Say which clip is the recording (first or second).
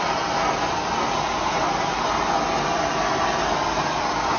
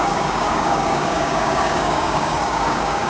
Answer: first